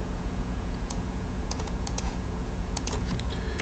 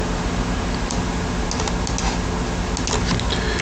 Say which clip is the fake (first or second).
first